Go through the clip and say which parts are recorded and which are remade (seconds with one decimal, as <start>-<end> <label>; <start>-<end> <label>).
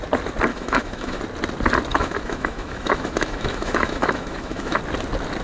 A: 0.0-0.5 recorded; 0.5-1.2 remade; 1.2-1.9 recorded; 1.9-4.8 remade; 4.8-5.4 recorded